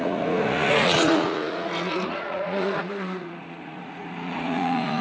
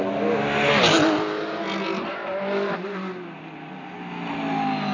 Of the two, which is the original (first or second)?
second